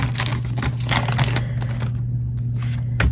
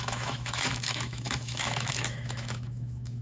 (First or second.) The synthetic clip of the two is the second